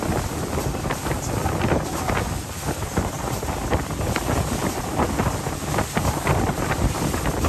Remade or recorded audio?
remade